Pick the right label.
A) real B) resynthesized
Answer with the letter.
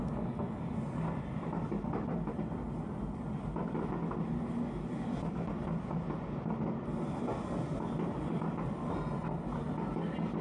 A